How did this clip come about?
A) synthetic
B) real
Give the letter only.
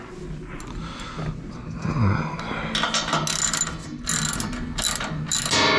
B